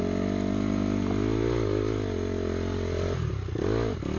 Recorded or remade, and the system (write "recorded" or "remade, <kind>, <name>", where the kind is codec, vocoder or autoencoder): recorded